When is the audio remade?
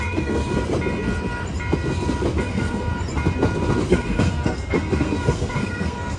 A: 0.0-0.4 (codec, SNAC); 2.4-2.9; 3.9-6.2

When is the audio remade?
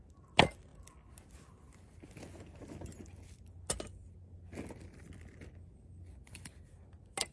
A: none